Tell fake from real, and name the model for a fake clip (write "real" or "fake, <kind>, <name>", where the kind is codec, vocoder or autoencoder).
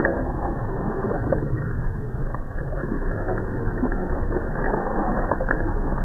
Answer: fake, codec, SNAC